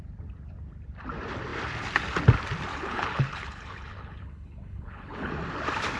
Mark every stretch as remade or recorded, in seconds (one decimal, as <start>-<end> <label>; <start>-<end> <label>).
0.0-2.7 recorded; 2.7-5.3 remade; 5.3-6.0 recorded